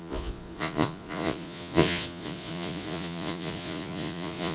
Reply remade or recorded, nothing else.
remade